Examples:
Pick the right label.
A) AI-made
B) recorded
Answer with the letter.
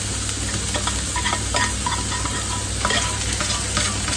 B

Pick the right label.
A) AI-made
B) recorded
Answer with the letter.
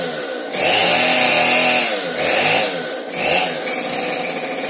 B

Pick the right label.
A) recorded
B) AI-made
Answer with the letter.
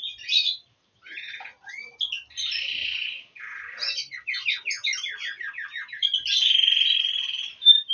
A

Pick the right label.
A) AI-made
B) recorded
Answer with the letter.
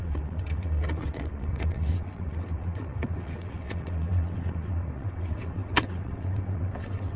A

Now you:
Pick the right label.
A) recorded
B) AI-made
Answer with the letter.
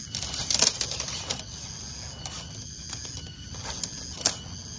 A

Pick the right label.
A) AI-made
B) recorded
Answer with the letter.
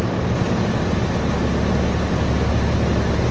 B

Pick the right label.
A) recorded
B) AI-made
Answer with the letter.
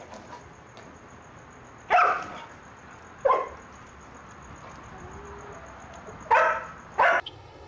A